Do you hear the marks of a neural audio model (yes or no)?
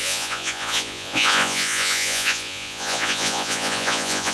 yes